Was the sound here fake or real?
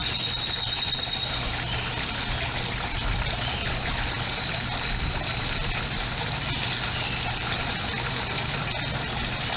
real